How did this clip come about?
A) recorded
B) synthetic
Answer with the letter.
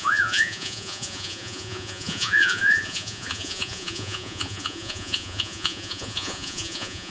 B